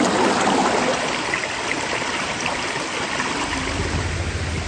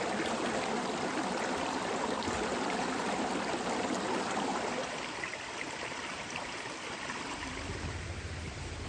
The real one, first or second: first